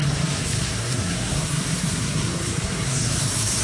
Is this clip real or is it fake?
fake